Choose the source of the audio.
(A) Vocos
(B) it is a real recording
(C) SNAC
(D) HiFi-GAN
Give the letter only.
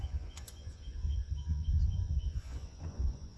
A